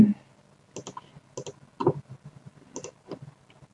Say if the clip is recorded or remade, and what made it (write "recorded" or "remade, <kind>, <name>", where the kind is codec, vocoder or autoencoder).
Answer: recorded